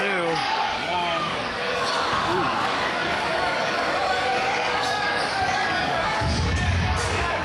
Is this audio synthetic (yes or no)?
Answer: yes